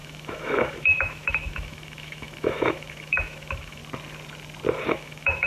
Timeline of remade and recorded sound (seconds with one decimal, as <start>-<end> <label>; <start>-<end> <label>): 0.0-3.8 remade; 3.8-4.9 recorded; 4.9-5.5 remade